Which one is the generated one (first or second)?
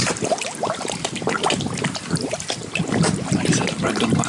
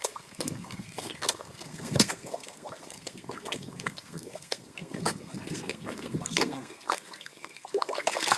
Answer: second